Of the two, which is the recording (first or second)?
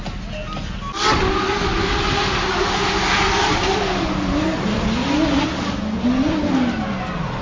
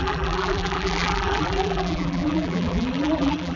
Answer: first